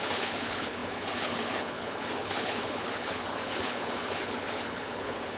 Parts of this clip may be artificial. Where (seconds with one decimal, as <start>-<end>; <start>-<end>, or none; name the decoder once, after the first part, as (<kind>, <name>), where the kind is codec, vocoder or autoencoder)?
0.0-5.4 (codec, HILCodec)